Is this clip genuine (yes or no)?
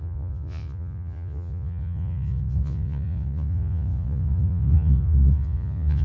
no